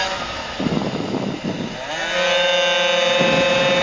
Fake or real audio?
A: real